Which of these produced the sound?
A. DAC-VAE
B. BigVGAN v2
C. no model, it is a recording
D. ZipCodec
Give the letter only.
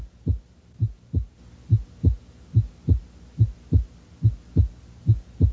C